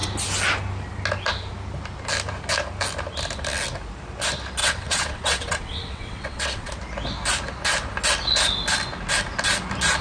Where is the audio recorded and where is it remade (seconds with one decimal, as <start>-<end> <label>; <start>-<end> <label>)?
0.0-4.6 recorded; 4.6-6.7 remade; 6.7-10.0 recorded